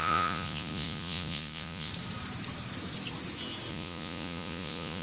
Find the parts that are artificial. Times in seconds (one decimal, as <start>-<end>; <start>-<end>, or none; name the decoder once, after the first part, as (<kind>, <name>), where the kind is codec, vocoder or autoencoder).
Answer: 0.0-1.9 (vocoder, Vocos); 3.7-5.0